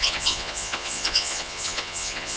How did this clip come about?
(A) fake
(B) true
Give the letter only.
A